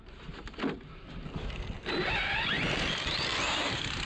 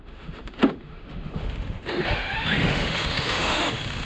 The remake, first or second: second